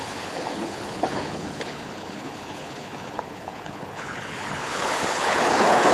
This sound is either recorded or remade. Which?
remade